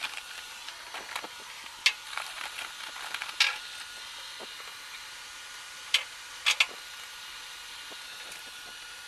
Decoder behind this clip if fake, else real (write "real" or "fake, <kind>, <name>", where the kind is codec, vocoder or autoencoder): real